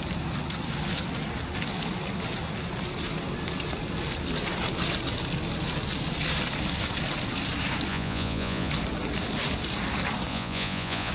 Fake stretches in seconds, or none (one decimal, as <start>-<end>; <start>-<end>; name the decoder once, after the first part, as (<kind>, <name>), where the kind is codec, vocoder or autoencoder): 7.9-8.7 (vocoder, Vocos); 10.3-11.1